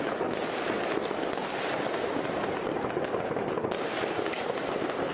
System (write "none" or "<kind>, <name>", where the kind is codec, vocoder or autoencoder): none